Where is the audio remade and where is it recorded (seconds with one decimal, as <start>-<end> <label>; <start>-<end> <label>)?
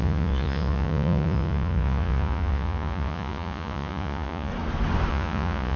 0.0-4.5 remade; 4.5-5.1 recorded; 5.1-5.8 remade